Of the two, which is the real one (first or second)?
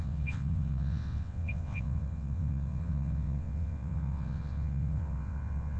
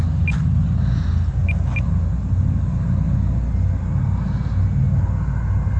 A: second